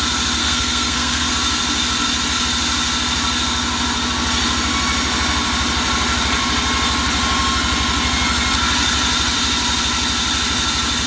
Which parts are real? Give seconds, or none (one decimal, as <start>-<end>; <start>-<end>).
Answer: 0.0-0.4; 1.3-11.1